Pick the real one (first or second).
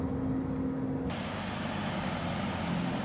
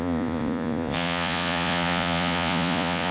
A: first